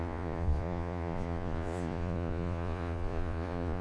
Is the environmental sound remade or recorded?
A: remade